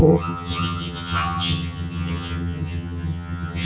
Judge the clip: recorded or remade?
remade